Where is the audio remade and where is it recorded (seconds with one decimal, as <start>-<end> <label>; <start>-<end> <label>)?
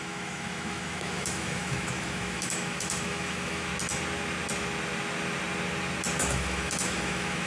0.0-3.7 remade; 3.7-6.2 recorded; 6.2-7.5 remade